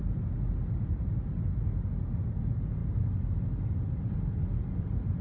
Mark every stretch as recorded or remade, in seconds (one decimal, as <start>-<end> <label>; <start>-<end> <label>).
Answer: 0.0-5.2 recorded